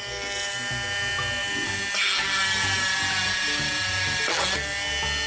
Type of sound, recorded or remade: recorded